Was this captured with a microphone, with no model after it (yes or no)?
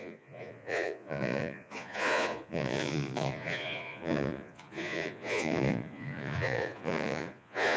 no